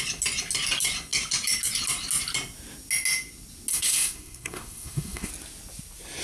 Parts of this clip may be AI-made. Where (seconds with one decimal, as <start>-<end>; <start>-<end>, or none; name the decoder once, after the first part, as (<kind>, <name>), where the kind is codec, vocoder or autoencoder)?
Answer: 3.7-5.3 (codec, SNAC)